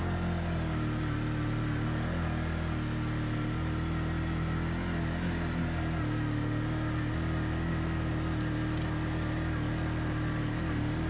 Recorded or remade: recorded